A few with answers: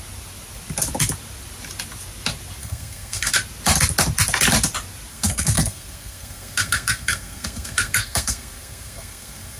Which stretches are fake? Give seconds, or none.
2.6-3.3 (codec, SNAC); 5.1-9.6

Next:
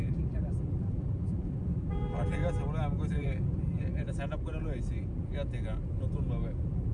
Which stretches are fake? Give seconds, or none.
0.0-2.4 (vocoder, BigVGAN v2); 3.1-3.8; 6.5-6.9

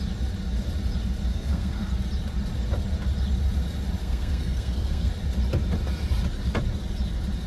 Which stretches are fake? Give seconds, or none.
1.3-1.9 (codec, SNAC); 4.0-5.1

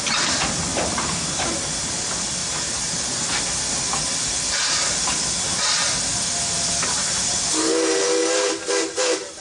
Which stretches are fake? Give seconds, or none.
2.4-3.0 (vocoder, BigVGAN v2)

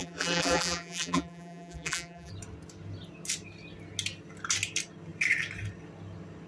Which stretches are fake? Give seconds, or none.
0.0-2.3 (vocoder, BigVGAN v2)

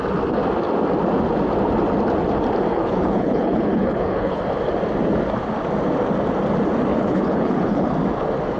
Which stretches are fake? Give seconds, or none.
2.7-4.4 (codec, HILCodec); 6.9-7.9

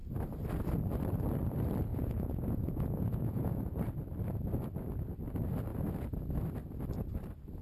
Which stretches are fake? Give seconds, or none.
1.9-3.6 (vocoder, Vocos)